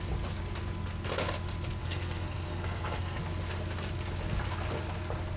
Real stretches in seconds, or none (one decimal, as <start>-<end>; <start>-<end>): 0.0-1.8; 3.2-5.4

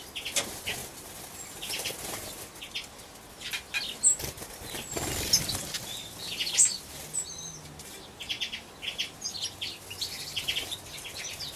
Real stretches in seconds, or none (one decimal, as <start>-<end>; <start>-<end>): 0.0-11.6

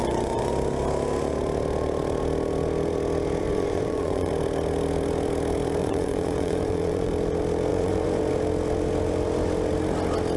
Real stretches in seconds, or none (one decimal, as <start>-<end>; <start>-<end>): 0.5-3.4; 4.3-5.8; 7.1-7.7; 8.3-10.4

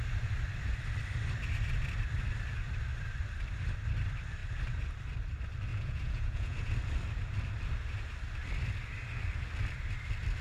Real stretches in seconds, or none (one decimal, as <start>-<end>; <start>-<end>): 0.0-5.7; 6.7-10.4

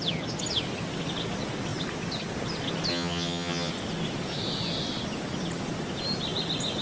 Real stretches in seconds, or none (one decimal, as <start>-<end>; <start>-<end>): 0.0-2.9; 3.7-6.8